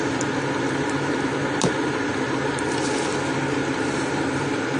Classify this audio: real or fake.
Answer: real